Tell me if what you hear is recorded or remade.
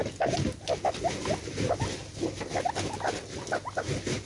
recorded